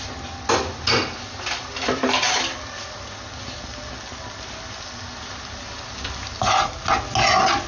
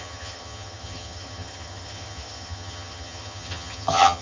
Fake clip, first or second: second